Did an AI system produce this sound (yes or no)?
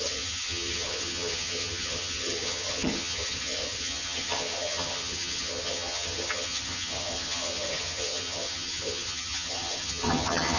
yes